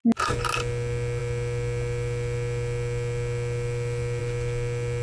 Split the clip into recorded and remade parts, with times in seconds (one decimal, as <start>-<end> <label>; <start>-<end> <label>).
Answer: 0.0-5.0 recorded

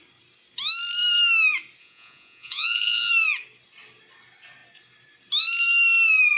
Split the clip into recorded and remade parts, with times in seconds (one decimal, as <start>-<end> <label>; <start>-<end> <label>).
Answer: 0.0-1.8 recorded; 1.8-3.1 remade; 3.1-6.4 recorded